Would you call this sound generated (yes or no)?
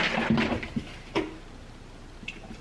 no